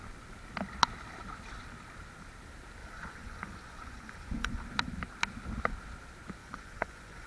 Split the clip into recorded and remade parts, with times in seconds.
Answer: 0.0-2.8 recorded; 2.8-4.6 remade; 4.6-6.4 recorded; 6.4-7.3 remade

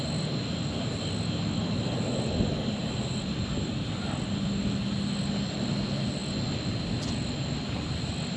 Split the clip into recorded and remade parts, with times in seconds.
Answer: 0.0-8.4 recorded

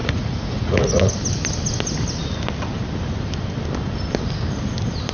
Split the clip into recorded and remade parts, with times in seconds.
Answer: 0.0-1.1 remade; 1.1-5.1 recorded

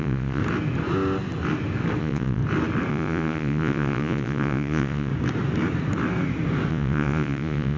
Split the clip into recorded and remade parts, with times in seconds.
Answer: 0.0-0.4 remade; 0.4-2.0 recorded; 2.0-2.4 remade; 2.4-2.9 recorded; 2.9-5.1 remade; 5.1-6.7 recorded; 6.7-7.8 remade

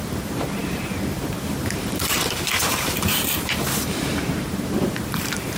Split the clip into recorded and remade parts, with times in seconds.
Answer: 0.0-5.6 remade

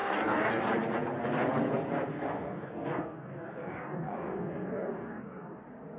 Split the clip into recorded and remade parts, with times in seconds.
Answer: 0.0-0.6 remade; 0.6-2.1 recorded; 2.1-5.6 remade; 5.6-6.0 recorded

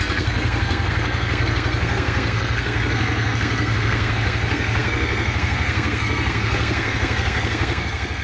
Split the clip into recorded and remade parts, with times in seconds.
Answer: 0.0-8.2 remade